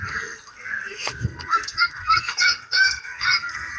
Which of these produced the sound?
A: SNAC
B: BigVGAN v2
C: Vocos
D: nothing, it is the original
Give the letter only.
A